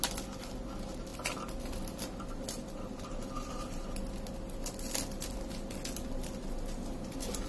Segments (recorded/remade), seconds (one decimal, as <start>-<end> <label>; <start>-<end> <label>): 0.0-7.5 recorded